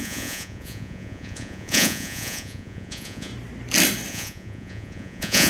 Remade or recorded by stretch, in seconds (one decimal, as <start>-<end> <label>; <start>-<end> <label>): 0.0-3.3 remade; 3.3-4.1 recorded; 4.1-5.5 remade